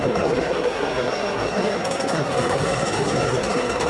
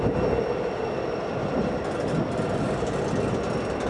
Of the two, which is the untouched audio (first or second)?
second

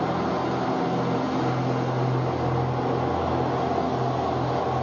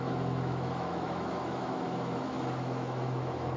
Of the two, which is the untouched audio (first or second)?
first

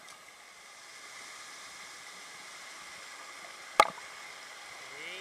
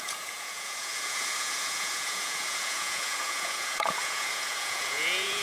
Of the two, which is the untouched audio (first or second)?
first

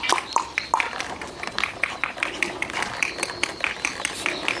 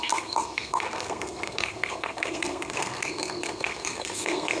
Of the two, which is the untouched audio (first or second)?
first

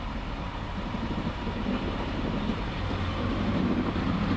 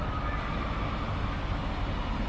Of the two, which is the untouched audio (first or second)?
second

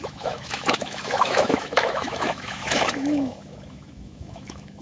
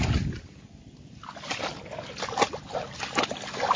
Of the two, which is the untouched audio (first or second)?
second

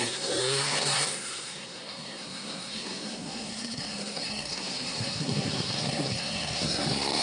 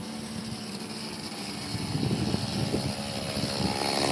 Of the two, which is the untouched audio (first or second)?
second